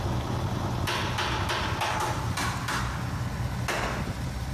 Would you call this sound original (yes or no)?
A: yes